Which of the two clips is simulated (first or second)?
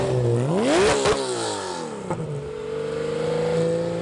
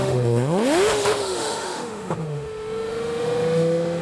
second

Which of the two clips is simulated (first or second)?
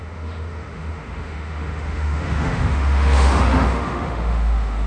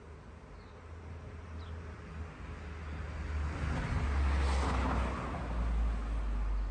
first